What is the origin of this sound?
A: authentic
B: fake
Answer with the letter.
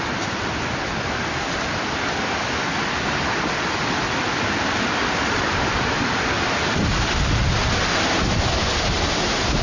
A